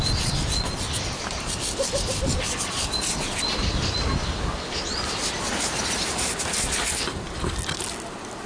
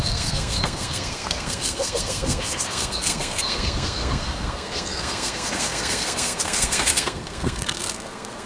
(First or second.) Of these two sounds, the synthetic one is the second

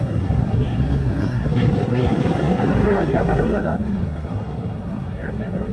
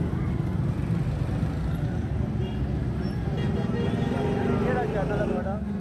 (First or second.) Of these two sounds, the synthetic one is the first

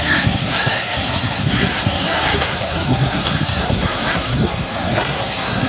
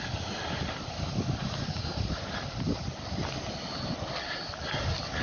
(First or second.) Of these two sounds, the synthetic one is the first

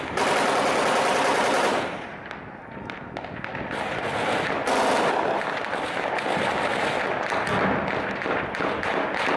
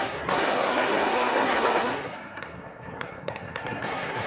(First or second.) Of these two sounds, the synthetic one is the second